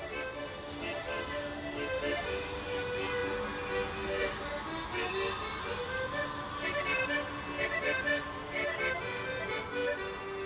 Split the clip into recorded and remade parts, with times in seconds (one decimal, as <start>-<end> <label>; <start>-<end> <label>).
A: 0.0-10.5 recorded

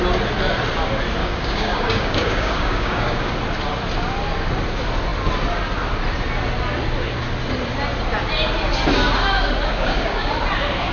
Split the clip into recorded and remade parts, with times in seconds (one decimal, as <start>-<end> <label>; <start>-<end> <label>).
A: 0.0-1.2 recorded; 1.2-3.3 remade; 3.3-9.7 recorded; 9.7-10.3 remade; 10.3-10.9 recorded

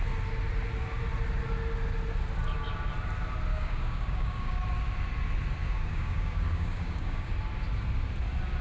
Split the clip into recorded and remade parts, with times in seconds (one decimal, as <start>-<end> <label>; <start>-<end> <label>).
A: 0.0-3.5 recorded; 3.5-4.6 remade; 4.6-5.6 recorded; 5.6-7.3 remade; 7.3-8.6 recorded

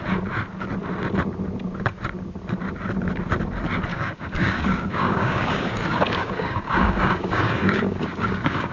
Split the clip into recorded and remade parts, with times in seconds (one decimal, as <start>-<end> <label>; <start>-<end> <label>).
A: 0.0-3.9 recorded; 3.9-8.7 remade

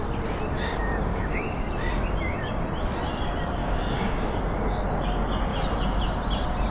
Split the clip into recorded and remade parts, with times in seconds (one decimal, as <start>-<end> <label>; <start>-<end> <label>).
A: 0.0-1.1 recorded; 1.1-1.7 remade; 1.7-3.6 recorded; 3.6-4.4 remade; 4.4-6.7 recorded

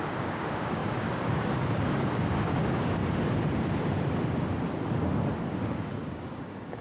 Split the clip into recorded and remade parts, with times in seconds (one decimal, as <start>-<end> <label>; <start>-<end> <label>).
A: 0.0-3.0 remade; 3.0-5.6 recorded; 5.6-6.8 remade